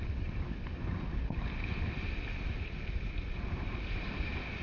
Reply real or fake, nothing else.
real